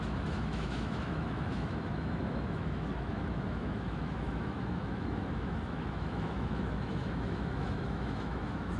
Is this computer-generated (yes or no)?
yes